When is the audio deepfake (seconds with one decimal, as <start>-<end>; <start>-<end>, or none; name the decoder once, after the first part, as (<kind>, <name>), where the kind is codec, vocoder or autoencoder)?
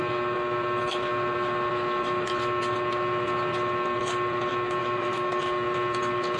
4.8-5.4 (autoencoder, DAC-VAE)